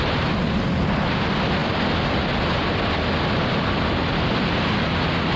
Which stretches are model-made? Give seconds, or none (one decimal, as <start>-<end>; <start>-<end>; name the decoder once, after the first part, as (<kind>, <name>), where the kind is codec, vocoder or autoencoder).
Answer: none